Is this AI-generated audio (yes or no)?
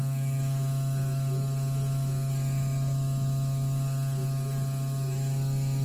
yes